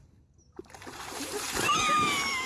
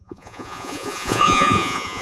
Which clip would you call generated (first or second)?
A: second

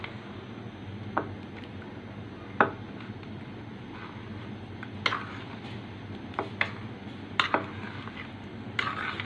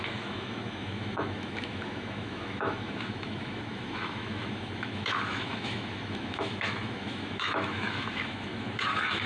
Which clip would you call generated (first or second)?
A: second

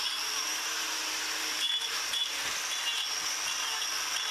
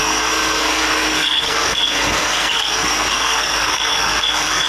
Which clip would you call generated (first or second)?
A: second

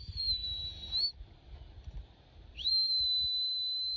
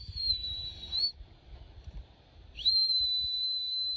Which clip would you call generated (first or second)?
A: second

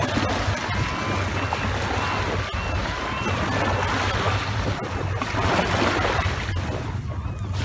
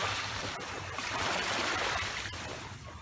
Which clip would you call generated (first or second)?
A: second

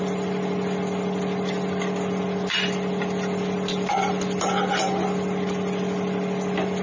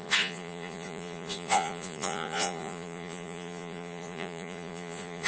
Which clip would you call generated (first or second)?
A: second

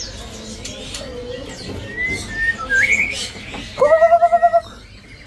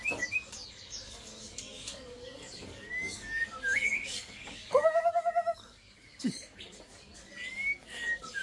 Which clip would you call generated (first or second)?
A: second